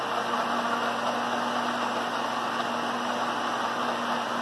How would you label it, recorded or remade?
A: recorded